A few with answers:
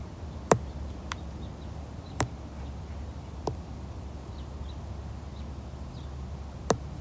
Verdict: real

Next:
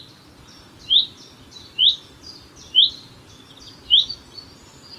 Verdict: real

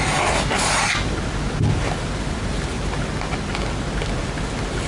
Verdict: real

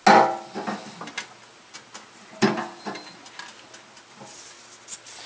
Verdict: real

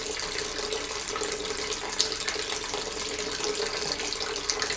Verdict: real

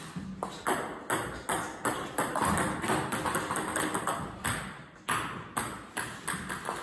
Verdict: real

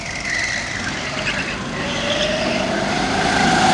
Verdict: real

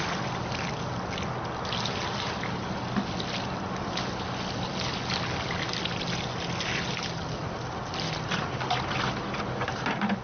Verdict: real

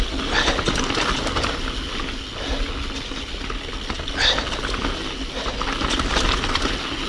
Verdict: real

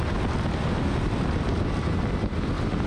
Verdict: real